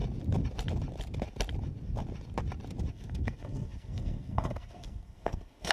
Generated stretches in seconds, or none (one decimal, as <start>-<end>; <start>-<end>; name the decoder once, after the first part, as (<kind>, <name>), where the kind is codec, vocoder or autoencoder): 2.9-5.7 (codec, SNAC)